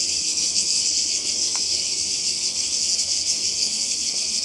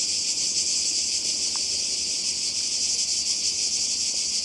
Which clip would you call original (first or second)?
second